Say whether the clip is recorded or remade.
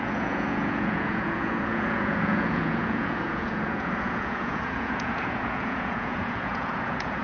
remade